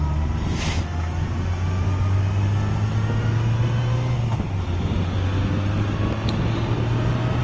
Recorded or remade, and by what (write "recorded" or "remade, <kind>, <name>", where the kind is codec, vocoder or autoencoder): recorded